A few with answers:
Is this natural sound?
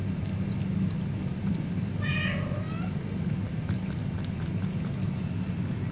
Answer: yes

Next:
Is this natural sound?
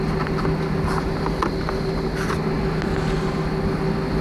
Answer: yes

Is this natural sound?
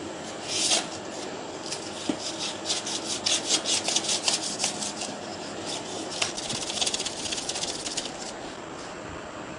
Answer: yes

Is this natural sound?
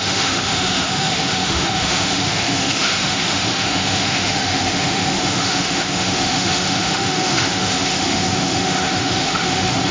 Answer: no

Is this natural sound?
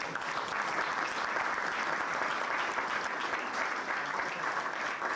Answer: yes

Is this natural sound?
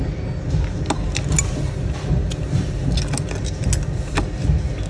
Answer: yes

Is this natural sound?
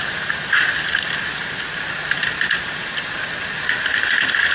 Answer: yes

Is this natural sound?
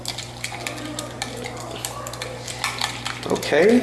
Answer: yes